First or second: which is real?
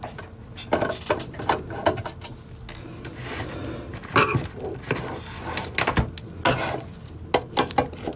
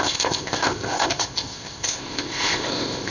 first